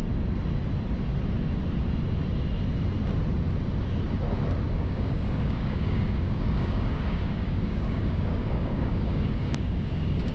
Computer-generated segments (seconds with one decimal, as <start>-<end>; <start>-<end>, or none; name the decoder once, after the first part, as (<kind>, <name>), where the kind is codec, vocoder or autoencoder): 4.7-10.3 (codec, DAC)